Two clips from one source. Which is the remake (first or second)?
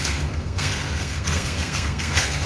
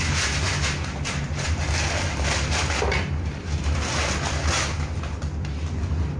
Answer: first